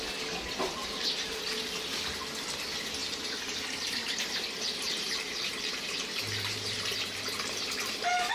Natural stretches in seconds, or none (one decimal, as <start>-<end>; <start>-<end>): 0.0-0.8; 1.6-3.0